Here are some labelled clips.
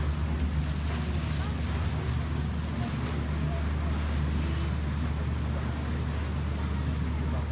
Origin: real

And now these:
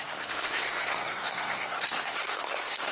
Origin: fake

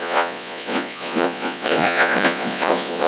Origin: fake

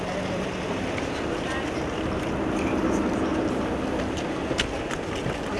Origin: real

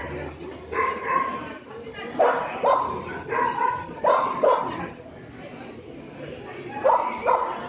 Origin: real